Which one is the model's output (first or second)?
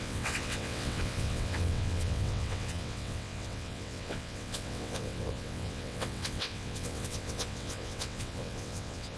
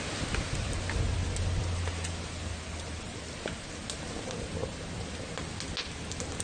first